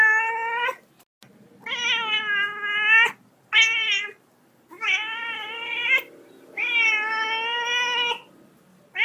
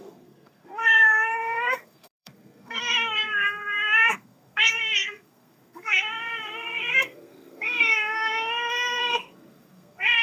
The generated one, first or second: second